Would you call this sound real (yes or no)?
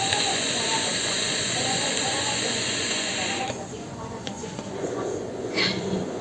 no